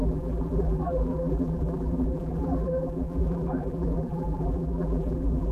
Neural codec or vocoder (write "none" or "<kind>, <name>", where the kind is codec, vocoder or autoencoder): vocoder, BigVGAN v2